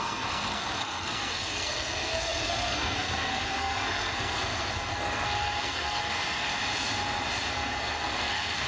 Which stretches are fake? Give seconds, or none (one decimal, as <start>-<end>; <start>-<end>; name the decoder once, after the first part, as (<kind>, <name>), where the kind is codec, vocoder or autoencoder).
0.0-6.5 (codec, SNAC); 7.5-8.7